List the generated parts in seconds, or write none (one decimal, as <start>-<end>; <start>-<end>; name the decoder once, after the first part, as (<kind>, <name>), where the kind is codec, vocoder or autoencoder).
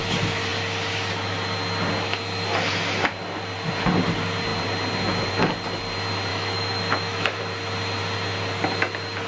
6.3-7.4 (autoencoder, DAC-VAE)